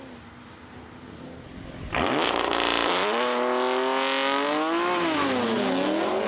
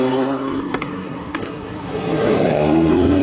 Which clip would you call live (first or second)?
first